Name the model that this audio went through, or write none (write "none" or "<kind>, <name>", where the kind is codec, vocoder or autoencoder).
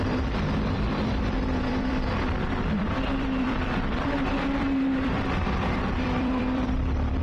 vocoder, BigVGAN v2